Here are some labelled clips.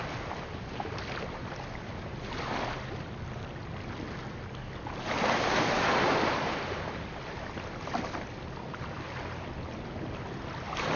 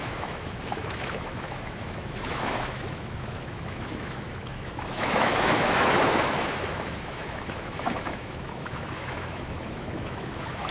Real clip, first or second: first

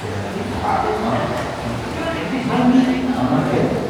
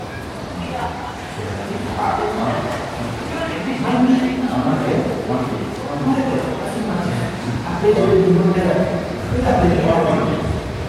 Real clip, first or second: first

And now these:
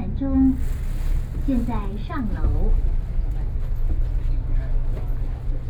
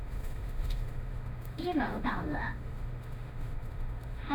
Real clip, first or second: first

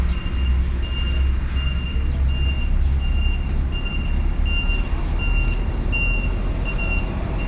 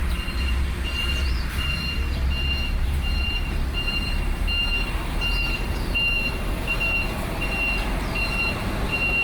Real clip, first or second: first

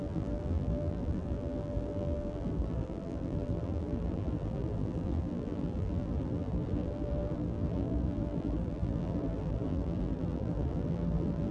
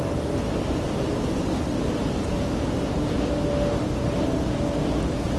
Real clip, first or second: second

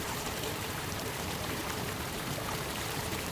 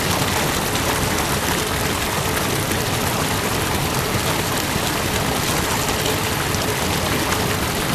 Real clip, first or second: second